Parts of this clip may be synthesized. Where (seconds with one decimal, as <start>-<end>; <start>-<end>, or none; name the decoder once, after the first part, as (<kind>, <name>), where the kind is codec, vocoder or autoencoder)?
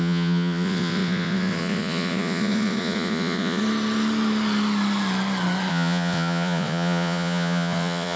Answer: 0.0-3.6 (vocoder, Vocos); 5.7-8.2